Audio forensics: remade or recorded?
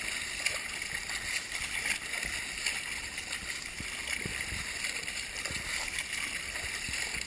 recorded